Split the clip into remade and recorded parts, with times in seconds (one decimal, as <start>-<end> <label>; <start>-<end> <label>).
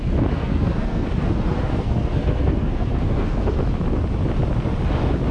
0.0-0.4 recorded; 0.4-3.6 remade; 3.6-5.3 recorded